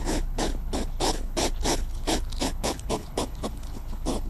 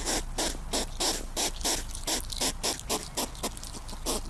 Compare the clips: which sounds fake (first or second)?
first